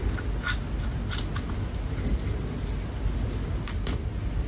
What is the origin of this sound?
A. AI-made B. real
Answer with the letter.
B